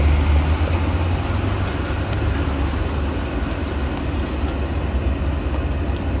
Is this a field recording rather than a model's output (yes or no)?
yes